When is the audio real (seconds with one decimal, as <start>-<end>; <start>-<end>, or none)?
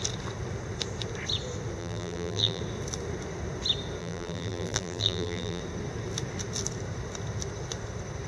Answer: 0.0-1.8; 2.6-4.0; 5.6-8.3